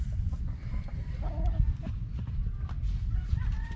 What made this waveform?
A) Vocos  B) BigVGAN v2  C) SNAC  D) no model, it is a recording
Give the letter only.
D